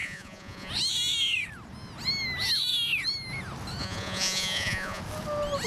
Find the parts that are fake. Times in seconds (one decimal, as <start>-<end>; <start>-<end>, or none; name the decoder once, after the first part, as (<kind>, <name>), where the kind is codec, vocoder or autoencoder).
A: 0.0-0.7 (vocoder, Vocos); 3.8-5.0